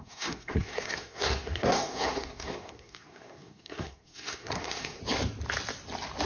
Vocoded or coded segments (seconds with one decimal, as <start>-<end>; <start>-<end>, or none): 0.0-5.0